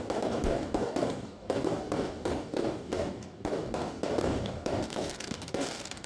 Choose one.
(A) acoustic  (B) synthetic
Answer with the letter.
B